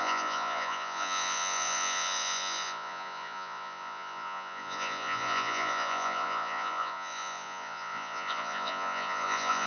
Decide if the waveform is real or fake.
fake